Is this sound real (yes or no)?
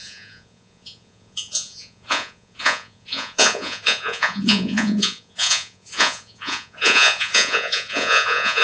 no